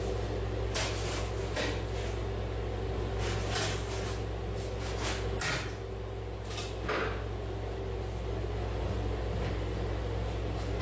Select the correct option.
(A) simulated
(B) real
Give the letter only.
B